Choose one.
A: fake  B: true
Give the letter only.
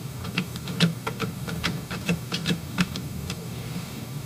A